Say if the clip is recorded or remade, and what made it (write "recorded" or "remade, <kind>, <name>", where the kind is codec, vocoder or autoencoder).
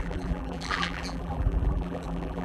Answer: remade, vocoder, BigVGAN v2